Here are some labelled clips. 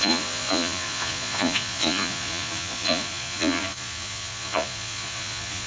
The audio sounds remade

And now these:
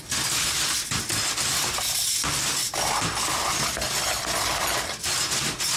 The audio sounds recorded